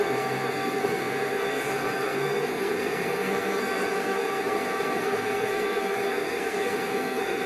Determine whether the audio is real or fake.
fake